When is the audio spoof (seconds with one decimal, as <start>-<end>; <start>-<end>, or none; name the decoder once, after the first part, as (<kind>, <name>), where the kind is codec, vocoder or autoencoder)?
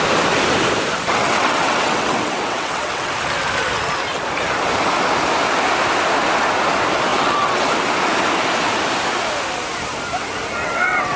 1.1-3.1 (vocoder, WaveNeXt); 7.1-7.7; 10.6-11.2